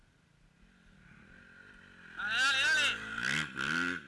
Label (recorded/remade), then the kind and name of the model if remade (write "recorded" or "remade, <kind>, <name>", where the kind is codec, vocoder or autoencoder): recorded